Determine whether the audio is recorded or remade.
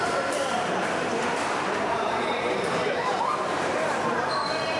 remade